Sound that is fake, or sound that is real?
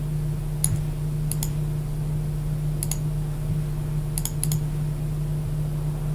real